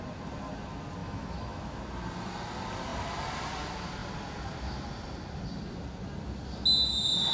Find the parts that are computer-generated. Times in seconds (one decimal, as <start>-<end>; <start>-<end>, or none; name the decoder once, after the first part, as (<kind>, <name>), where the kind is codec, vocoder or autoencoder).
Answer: 1.0-1.8 (autoencoder, DAC-VAE)